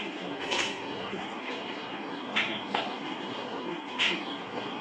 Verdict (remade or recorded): remade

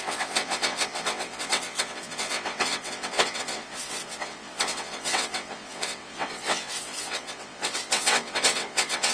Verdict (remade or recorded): remade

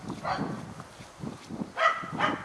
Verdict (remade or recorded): recorded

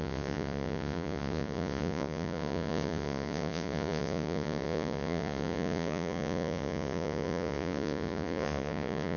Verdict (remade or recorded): remade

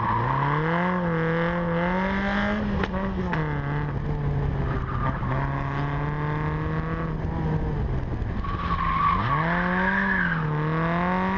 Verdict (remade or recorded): recorded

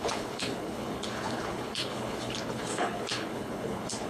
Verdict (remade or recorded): remade